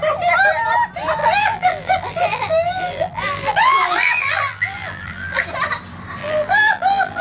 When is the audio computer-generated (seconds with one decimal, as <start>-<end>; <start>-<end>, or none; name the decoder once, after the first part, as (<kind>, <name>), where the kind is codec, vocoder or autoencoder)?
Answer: 1.2-5.4 (vocoder, BigVGAN v2); 6.2-7.2